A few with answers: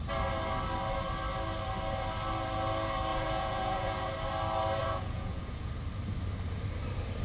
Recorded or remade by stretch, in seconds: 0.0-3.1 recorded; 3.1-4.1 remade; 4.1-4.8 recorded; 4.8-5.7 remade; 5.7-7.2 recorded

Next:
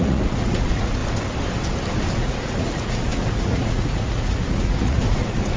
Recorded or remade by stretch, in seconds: 0.0-1.0 remade; 1.0-2.2 recorded; 2.2-5.6 remade